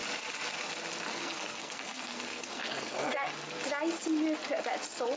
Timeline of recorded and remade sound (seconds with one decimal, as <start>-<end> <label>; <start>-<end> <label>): 0.0-1.1 recorded; 1.1-3.3 remade; 3.3-5.2 recorded